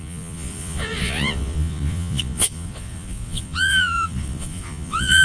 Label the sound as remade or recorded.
remade